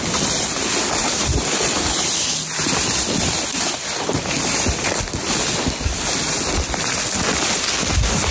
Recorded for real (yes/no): yes